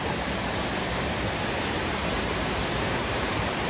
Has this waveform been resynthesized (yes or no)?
yes